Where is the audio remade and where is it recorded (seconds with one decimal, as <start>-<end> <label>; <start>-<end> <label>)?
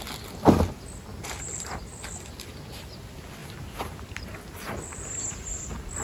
0.0-1.1 recorded; 1.1-1.8 remade; 1.8-3.4 recorded; 3.4-4.4 remade; 4.4-6.0 recorded